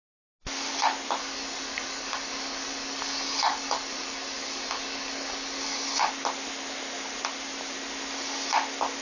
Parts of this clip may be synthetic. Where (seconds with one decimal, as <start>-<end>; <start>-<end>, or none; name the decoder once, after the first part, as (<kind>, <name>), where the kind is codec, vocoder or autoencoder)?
1.2-6.1 (codec, DAC)